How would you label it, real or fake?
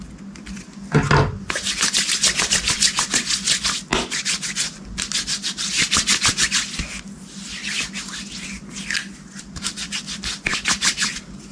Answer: real